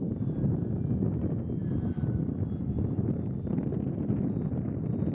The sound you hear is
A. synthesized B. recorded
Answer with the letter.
B